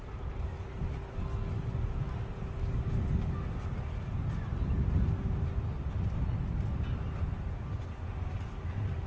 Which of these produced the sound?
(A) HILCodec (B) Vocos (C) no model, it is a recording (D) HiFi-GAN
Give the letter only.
C